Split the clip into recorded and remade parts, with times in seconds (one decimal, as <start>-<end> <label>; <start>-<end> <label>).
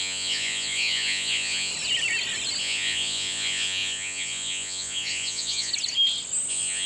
0.0-1.7 remade; 1.7-2.6 recorded; 2.6-5.7 remade; 5.7-6.5 recorded; 6.5-6.9 remade